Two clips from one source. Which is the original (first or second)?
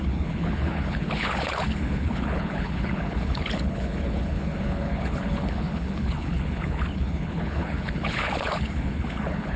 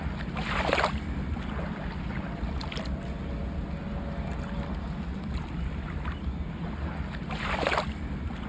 second